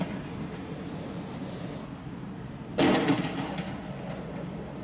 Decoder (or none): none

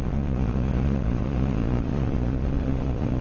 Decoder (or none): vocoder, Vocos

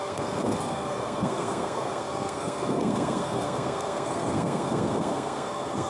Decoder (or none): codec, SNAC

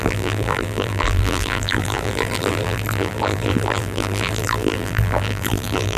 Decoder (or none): vocoder, BigVGAN v2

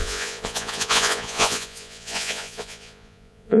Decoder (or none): vocoder, Vocos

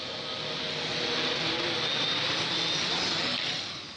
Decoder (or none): none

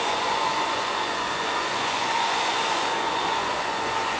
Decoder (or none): vocoder, Vocos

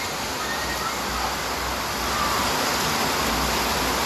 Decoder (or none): none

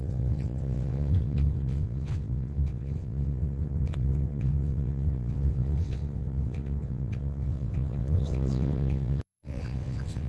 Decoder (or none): vocoder, WaveNeXt